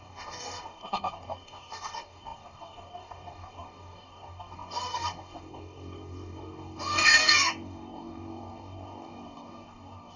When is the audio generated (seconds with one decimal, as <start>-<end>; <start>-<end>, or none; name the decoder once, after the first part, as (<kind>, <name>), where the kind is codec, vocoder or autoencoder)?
0.0-10.2 (codec, DAC)